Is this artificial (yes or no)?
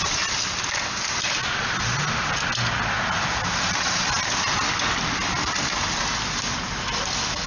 no